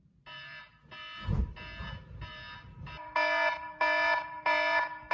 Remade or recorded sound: recorded